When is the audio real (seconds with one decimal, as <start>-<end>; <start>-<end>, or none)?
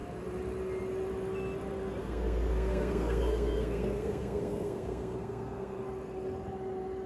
0.0-2.0; 5.8-7.1